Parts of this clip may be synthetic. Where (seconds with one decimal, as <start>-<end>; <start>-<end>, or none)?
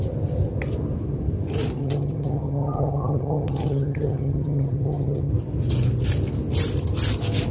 1.8-5.3